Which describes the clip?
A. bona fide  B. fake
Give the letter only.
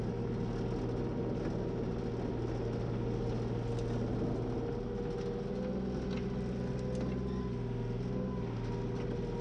A